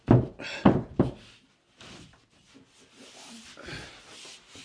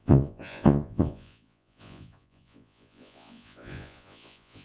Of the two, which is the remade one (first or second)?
second